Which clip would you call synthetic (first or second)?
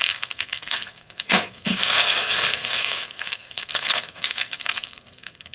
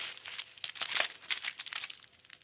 first